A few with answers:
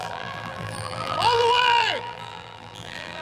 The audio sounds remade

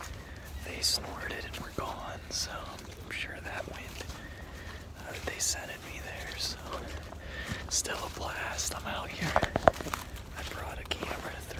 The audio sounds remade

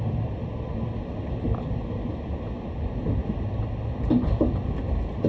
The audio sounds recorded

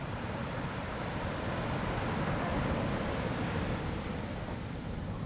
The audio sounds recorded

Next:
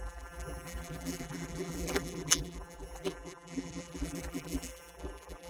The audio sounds remade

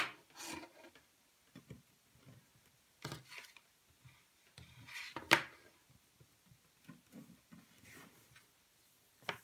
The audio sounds recorded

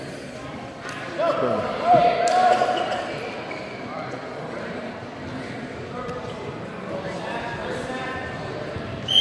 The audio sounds remade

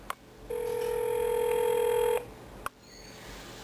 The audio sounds recorded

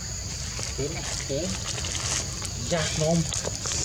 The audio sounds recorded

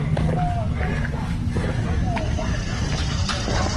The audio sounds recorded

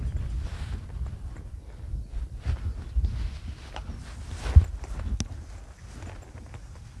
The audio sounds recorded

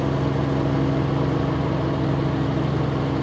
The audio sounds recorded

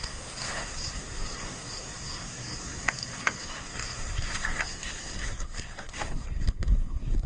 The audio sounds remade